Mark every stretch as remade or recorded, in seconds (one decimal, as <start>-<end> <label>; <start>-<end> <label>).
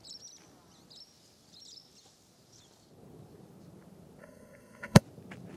0.0-4.2 recorded; 4.2-5.0 remade; 5.0-5.6 recorded